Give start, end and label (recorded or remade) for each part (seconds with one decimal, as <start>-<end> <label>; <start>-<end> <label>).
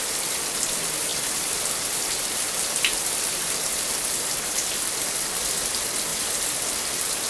0.0-1.1 recorded; 1.1-5.5 remade; 5.5-6.1 recorded; 6.1-6.6 remade; 6.6-7.3 recorded